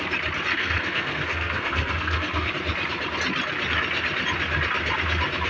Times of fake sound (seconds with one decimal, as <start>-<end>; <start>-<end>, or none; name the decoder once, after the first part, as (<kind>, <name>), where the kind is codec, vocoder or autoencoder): 0.5-2.5 (codec, SNAC)